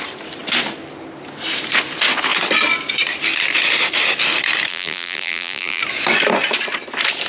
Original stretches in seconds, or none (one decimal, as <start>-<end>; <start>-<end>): 0.0-4.7; 5.8-7.3